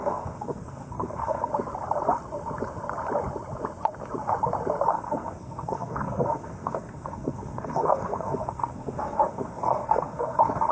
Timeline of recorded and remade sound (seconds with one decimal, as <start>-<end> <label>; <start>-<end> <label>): 0.0-1.5 remade; 1.5-4.9 recorded; 4.9-10.7 remade